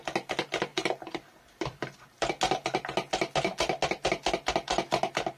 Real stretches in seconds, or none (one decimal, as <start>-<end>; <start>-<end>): 0.0-0.7; 2.3-5.4